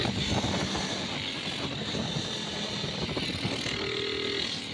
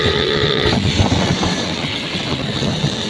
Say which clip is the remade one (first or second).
second